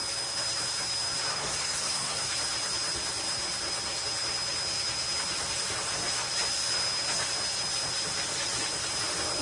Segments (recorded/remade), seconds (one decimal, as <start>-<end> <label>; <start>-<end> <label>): 0.0-1.3 recorded; 1.3-2.2 remade; 2.2-9.4 recorded

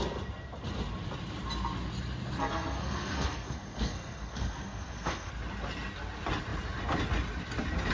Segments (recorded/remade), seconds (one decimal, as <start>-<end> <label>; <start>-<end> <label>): 0.0-2.4 recorded; 2.4-5.3 remade; 5.3-7.9 recorded

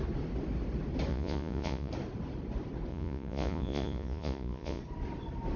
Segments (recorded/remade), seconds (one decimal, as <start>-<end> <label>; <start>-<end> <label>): 0.0-1.1 recorded; 1.1-1.9 remade; 1.9-2.9 recorded; 2.9-4.8 remade; 4.8-5.6 recorded